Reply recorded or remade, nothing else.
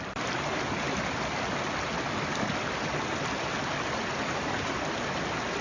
recorded